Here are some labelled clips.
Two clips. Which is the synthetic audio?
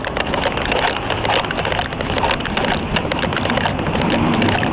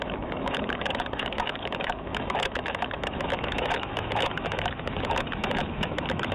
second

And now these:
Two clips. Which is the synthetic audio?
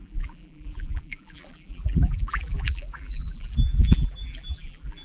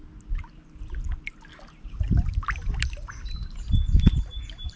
first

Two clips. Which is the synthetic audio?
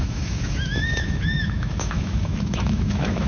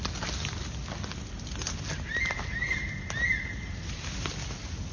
first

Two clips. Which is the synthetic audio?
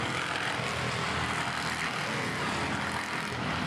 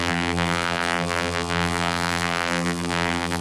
second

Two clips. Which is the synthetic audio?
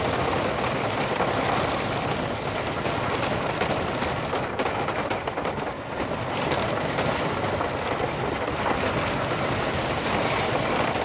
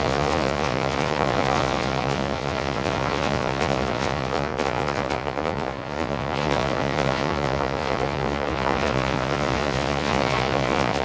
second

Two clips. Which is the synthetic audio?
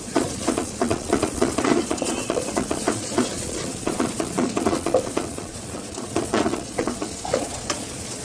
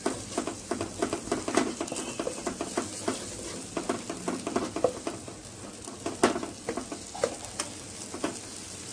first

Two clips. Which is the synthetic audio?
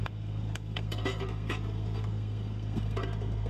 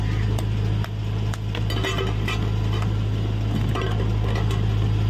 first